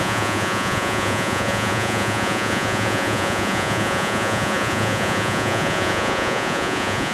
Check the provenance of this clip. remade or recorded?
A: remade